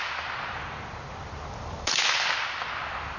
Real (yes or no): yes